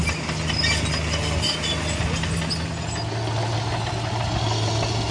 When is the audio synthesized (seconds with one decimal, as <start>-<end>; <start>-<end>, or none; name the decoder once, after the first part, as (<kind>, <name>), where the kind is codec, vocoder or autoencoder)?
none